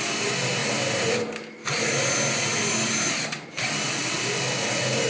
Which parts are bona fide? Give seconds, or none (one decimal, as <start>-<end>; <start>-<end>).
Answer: 0.0-5.1